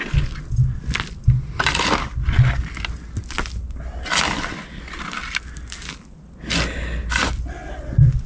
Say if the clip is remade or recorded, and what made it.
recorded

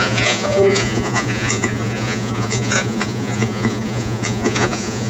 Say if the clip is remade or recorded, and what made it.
remade, vocoder, Vocos